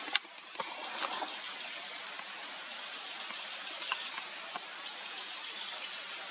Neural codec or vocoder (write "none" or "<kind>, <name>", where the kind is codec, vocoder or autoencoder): none